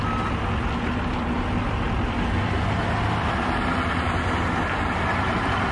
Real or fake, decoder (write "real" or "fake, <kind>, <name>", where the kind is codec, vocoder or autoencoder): real